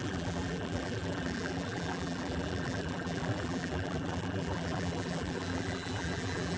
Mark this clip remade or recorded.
remade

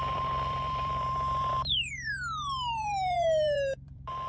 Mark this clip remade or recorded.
remade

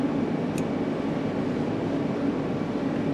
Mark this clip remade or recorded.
recorded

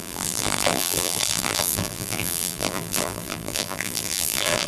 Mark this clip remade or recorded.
remade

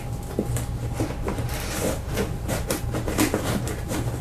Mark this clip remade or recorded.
recorded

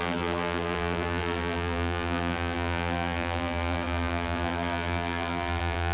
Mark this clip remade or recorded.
remade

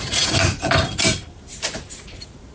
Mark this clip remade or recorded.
remade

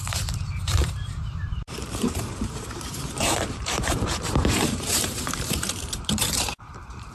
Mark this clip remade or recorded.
remade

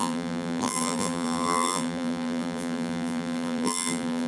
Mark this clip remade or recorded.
remade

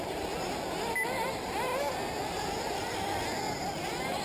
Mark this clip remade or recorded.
recorded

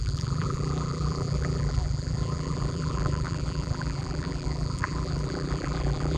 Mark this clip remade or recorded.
remade